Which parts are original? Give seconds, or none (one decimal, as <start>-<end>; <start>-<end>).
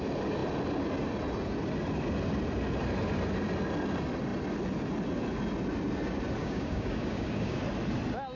0.0-6.4; 7.6-8.4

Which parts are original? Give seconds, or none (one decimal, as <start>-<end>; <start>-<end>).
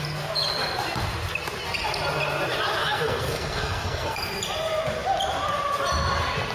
0.0-2.8; 4.3-6.5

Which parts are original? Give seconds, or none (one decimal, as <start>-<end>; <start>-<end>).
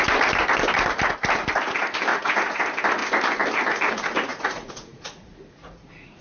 0.0-2.1; 2.6-4.3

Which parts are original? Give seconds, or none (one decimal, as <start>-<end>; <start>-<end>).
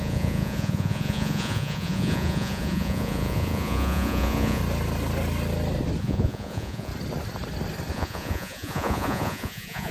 4.6-6.0; 6.9-7.9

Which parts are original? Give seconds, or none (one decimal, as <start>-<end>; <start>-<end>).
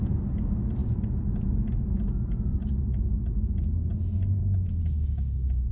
0.0-5.7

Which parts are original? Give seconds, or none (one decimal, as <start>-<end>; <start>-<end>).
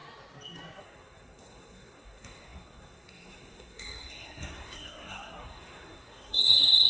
0.0-0.8